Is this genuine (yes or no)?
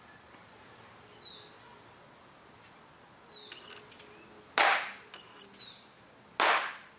yes